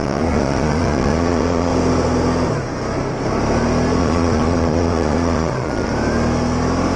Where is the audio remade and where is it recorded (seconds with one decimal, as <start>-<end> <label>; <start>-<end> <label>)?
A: 0.0-1.7 remade; 1.7-4.0 recorded; 4.0-5.9 remade; 5.9-7.0 recorded